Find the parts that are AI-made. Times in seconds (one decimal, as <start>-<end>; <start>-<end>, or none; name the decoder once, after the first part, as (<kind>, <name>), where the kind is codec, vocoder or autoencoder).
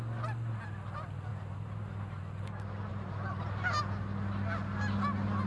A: 1.3-2.2 (vocoder, BigVGAN v2); 2.9-3.8